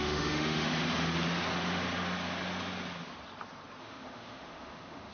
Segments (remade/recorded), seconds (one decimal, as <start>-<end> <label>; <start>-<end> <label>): 0.0-0.7 remade; 0.7-3.8 recorded; 3.8-5.1 remade

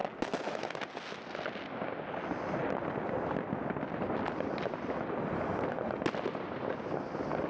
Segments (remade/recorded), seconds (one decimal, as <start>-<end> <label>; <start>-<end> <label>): 0.0-7.5 recorded

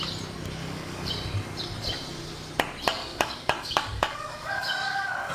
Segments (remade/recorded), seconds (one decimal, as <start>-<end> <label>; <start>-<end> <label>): 0.0-0.6 recorded; 0.6-1.1 remade; 1.1-3.0 recorded; 3.0-5.3 remade

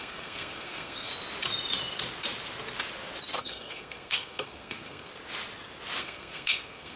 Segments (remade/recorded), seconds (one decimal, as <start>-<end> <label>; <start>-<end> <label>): 0.0-1.1 remade; 1.1-3.4 recorded; 3.4-5.1 remade; 5.1-6.0 recorded; 6.0-7.0 remade

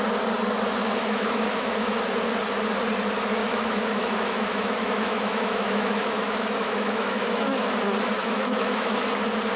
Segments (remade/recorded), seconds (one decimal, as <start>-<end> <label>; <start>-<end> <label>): 0.0-0.8 recorded; 0.8-2.0 remade; 2.0-3.4 recorded; 3.4-7.7 remade; 7.7-8.2 recorded; 8.2-9.0 remade; 9.0-9.6 recorded

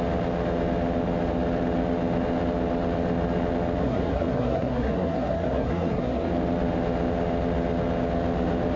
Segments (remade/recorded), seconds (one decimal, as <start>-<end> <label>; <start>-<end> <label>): 0.0-3.8 recorded; 3.8-6.3 remade; 6.3-8.8 recorded

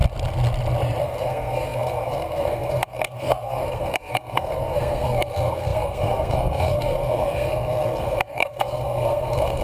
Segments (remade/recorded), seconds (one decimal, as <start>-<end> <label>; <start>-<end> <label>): 0.0-1.0 recorded; 1.0-9.6 remade

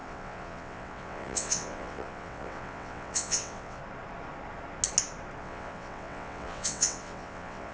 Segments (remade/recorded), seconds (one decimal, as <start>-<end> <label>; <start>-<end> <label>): 0.0-3.8 remade; 3.8-5.4 recorded; 5.4-7.7 remade